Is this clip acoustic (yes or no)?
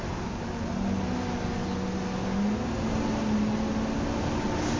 yes